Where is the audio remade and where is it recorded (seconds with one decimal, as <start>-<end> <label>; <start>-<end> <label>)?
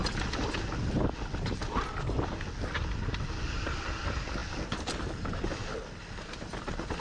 0.0-7.0 recorded